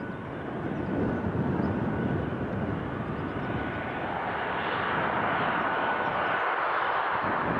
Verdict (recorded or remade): recorded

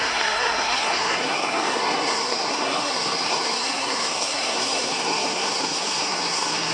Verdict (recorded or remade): remade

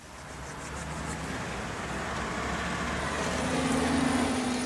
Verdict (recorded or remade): recorded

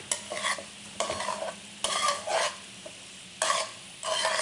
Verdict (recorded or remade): recorded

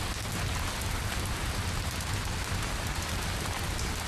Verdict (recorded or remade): recorded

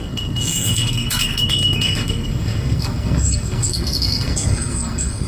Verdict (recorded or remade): remade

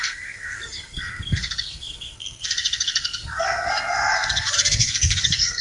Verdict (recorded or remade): remade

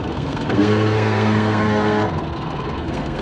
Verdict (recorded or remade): remade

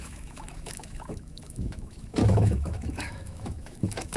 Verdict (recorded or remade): remade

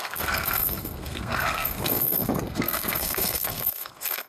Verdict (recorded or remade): remade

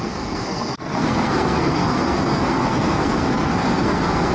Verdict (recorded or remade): remade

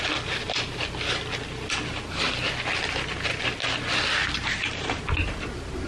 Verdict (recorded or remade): recorded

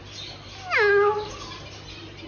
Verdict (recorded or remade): recorded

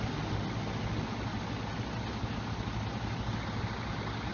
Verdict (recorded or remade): recorded